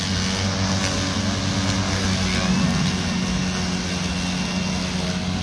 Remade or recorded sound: recorded